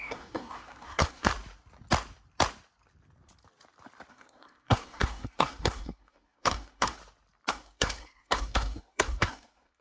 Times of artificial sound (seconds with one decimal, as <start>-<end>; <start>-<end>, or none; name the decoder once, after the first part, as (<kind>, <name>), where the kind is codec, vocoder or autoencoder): 0.0-1.3 (codec, SNAC); 4.1-7.0; 7.5-9.8